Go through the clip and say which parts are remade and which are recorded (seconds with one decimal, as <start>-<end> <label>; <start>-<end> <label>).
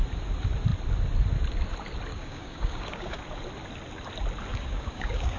0.0-2.1 recorded; 2.1-3.2 remade; 3.2-4.5 recorded; 4.5-5.4 remade